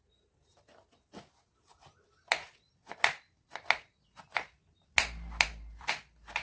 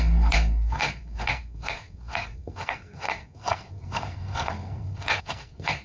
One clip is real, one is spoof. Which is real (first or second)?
first